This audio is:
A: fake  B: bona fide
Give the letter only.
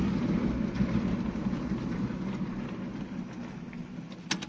B